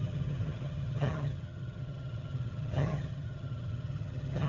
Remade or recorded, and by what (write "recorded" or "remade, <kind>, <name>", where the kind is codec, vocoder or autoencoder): remade, vocoder, HiFi-GAN